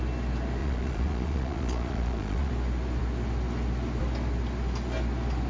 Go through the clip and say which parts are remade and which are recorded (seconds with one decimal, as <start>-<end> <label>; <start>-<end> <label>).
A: 0.0-0.6 recorded; 0.6-2.5 remade; 2.5-5.5 recorded